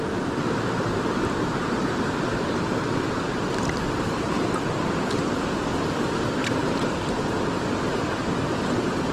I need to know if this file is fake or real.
fake